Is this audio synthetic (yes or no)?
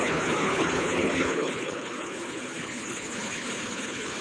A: yes